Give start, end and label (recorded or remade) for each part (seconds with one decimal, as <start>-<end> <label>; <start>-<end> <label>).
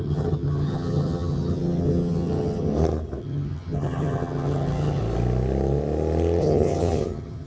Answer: 0.0-2.7 remade; 2.7-3.2 recorded; 3.2-5.0 remade; 5.0-6.4 recorded; 6.4-7.5 remade